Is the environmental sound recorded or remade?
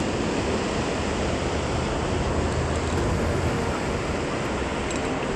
recorded